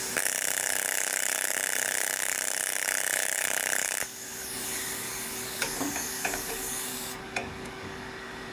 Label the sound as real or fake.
fake